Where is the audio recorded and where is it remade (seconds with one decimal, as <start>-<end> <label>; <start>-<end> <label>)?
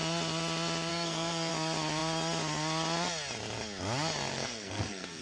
0.0-0.9 recorded; 0.9-1.5 remade; 1.5-4.3 recorded; 4.3-5.2 remade